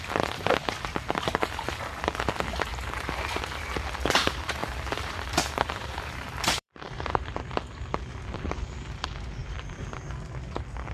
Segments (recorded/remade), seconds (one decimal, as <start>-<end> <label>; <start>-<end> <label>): 0.0-2.7 recorded; 2.7-3.4 remade; 3.4-4.6 recorded; 4.6-7.4 remade; 7.4-9.4 recorded; 9.4-9.9 remade; 9.9-10.9 recorded